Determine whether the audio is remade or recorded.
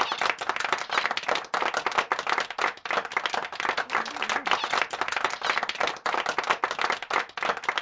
recorded